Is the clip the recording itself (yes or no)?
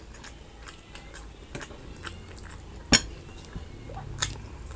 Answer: yes